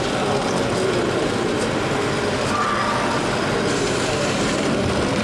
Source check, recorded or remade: recorded